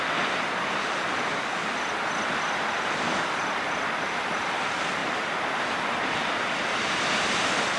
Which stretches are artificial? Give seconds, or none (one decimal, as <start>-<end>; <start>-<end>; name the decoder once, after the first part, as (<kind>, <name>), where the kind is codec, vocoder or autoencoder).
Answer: 0.0-7.8 (vocoder, BigVGAN v2)